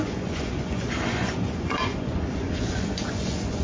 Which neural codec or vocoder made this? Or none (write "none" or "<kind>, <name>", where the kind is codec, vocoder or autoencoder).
vocoder, Vocos